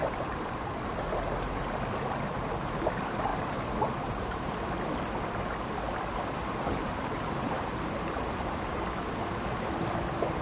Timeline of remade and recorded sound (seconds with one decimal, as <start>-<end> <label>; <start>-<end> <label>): 0.0-0.8 remade; 0.8-3.3 recorded; 3.3-4.7 remade; 4.7-6.4 recorded; 6.4-8.8 remade; 8.8-10.4 recorded